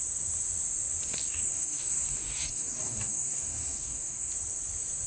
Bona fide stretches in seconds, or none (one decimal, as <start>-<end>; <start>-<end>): 0.0-1.2; 4.3-5.1